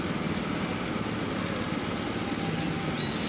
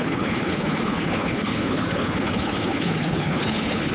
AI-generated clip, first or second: second